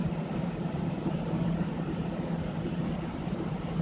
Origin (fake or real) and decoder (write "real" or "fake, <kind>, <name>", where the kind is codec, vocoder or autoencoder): fake, vocoder, BigVGAN v2